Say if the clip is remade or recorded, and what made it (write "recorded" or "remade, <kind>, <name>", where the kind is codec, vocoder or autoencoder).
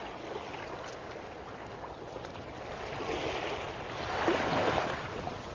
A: recorded